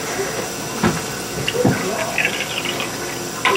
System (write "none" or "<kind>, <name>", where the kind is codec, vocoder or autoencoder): none